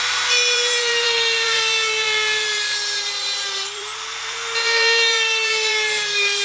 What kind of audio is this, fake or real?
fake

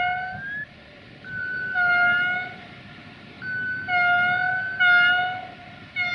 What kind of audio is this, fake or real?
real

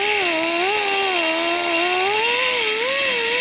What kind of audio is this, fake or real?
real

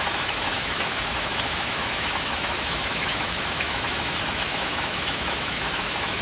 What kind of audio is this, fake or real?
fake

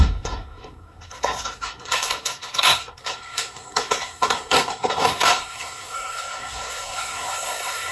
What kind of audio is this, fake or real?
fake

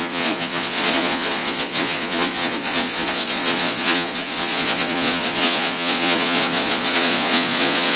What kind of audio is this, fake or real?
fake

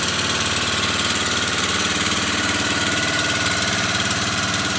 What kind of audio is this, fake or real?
fake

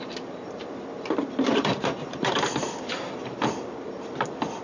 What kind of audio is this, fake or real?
fake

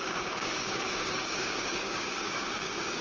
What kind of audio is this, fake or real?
fake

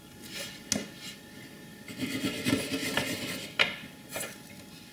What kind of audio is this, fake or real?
real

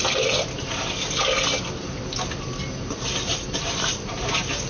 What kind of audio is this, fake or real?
real